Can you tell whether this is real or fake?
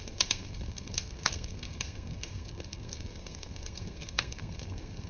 fake